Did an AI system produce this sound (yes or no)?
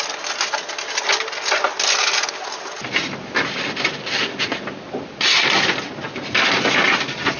no